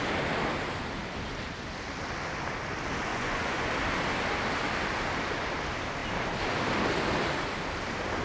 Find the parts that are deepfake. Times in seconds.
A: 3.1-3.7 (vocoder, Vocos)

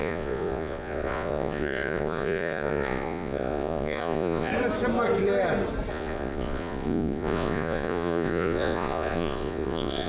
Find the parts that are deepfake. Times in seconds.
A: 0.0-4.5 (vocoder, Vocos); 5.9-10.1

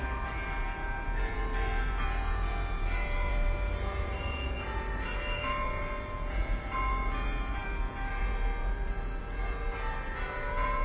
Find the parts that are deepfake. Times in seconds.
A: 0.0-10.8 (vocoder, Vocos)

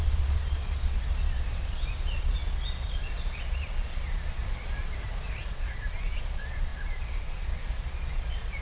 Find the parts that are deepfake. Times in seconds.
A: 0.0-4.4 (vocoder, Vocos); 5.4-8.6